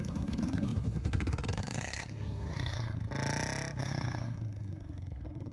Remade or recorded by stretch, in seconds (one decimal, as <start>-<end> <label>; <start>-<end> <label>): 0.0-3.0 remade; 3.0-3.8 recorded; 3.8-5.5 remade